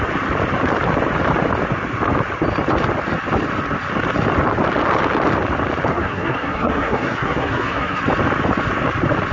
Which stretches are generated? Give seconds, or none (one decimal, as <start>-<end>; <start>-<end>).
5.9-8.0